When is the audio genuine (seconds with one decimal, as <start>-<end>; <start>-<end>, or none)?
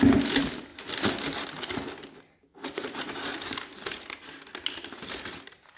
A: 0.0-2.5; 3.1-5.8